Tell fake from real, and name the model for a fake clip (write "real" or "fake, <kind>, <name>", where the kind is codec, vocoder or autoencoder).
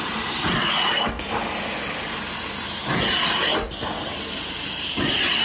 real